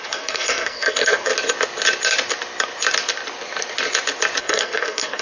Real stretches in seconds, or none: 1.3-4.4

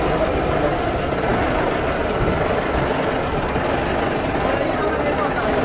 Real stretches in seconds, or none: 0.0-5.6

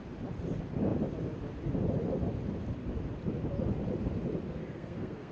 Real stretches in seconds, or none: 0.0-4.5

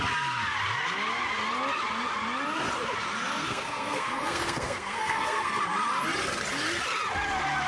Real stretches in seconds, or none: 0.0-3.4; 5.6-7.7